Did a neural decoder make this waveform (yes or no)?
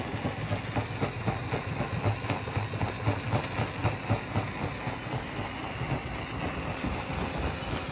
no